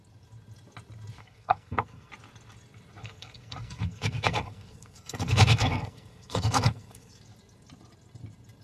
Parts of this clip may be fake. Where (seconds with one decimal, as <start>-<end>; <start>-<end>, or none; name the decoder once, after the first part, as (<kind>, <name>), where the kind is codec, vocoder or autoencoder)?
1.2-2.1 (codec, SNAC); 3.0-7.2